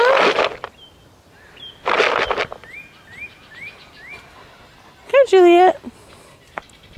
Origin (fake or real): real